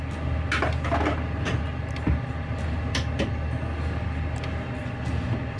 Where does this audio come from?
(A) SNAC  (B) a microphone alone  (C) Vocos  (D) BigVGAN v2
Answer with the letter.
B